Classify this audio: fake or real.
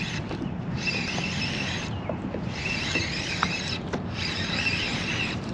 real